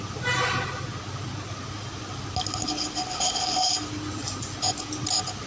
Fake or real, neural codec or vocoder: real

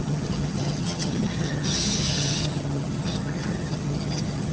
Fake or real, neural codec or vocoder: fake, vocoder, HiFi-GAN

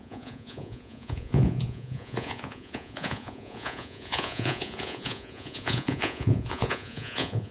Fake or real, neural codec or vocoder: fake, vocoder, Vocos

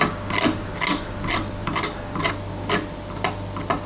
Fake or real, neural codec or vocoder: real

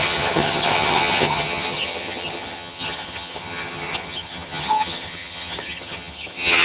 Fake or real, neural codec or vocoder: fake, vocoder, HiFi-GAN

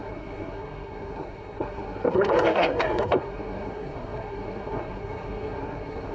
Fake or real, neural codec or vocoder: fake, codec, SNAC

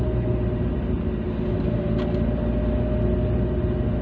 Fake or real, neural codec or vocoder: real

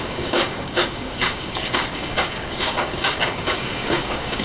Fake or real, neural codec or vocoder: fake, codec, DAC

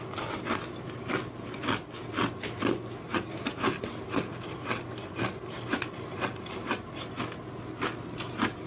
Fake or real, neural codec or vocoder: real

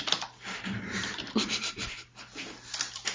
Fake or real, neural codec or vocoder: fake, vocoder, BigVGAN v2